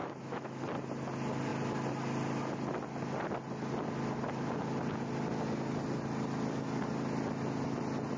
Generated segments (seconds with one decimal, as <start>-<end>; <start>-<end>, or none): 0.0-0.6